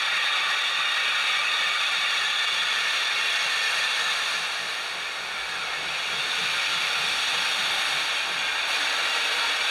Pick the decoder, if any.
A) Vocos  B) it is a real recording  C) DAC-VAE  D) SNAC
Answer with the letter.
B